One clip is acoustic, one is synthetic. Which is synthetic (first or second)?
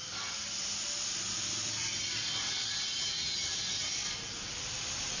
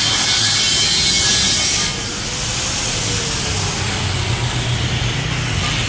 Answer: first